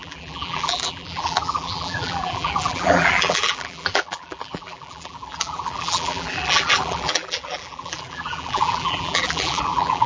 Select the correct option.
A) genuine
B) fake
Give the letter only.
B